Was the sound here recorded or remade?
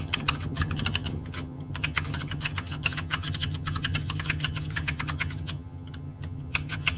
remade